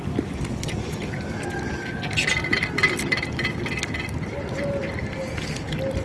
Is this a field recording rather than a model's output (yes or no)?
yes